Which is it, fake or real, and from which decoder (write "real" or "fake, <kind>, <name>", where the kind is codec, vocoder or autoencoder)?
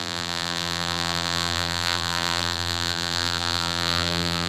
fake, vocoder, BigVGAN v2